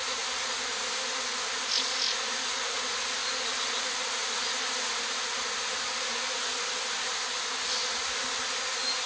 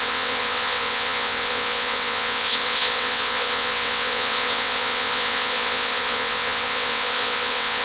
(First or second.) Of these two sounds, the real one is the first